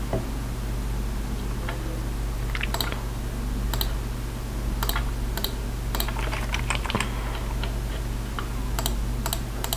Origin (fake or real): real